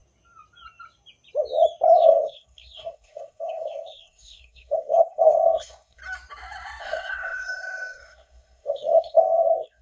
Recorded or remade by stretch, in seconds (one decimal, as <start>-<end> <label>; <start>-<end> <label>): 0.0-1.9 recorded; 1.9-6.0 remade; 6.0-6.8 recorded; 6.8-9.8 remade